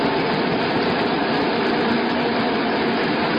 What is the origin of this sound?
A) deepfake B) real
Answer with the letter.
A